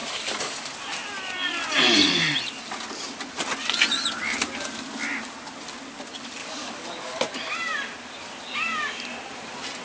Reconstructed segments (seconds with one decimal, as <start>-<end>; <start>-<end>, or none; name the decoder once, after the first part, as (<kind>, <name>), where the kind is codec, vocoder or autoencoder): 0.0-0.7 (codec, DAC); 6.4-7.2